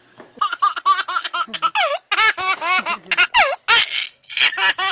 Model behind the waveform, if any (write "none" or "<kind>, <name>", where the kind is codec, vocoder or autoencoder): none